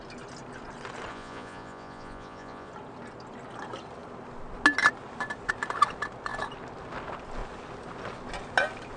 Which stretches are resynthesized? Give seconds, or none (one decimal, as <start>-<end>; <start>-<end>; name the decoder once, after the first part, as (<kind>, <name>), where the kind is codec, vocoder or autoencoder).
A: 1.1-2.7 (vocoder, Vocos)